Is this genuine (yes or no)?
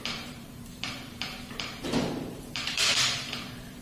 no